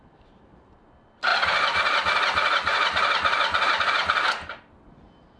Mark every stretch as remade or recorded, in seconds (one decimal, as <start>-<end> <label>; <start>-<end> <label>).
0.0-5.4 recorded